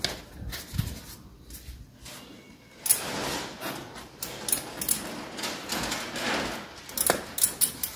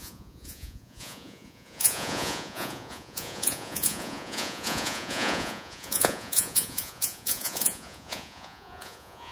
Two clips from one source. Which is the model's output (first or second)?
second